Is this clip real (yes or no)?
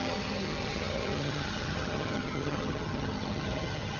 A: no